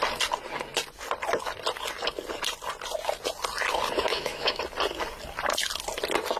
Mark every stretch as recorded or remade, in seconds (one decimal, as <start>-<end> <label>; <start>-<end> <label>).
0.0-4.1 recorded; 4.1-4.6 remade; 4.6-6.4 recorded